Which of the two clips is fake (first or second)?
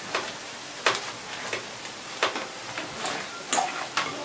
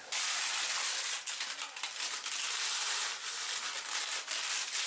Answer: first